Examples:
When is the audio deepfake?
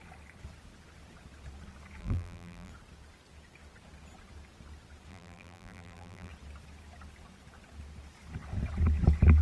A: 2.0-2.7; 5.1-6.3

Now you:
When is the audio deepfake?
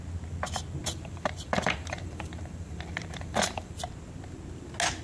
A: 0.8-3.8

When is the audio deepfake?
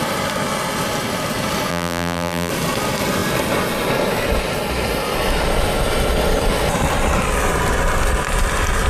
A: 1.7-2.5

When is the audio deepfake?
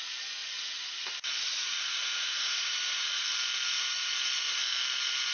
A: 0.4-3.4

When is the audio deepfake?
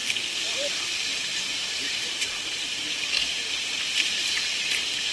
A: 1.2-5.1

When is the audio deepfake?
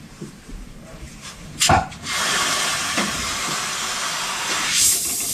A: 0.0-4.0; 4.5-5.3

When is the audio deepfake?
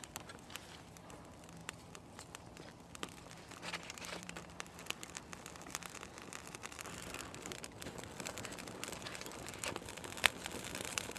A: 0.0-1.6; 3.0-11.2